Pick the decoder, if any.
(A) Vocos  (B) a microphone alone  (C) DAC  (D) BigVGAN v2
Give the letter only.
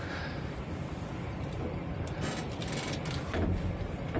B